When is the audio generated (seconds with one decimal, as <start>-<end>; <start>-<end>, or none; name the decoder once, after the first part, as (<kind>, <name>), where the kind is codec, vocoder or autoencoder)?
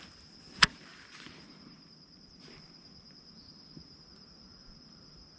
none